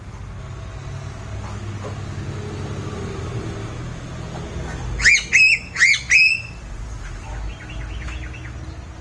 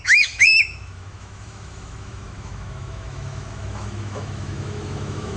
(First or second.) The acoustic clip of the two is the first